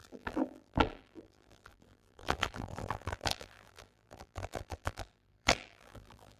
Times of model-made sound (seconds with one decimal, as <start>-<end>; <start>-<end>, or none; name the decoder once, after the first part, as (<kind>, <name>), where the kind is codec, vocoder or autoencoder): 0.0-6.4 (vocoder, BigVGAN v2)